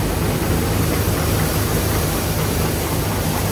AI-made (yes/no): no